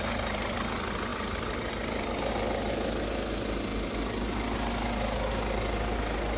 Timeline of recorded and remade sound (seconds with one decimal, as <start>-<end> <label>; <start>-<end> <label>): 0.0-6.4 recorded